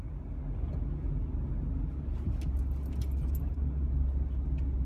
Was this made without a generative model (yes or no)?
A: yes